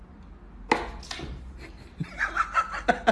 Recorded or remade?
recorded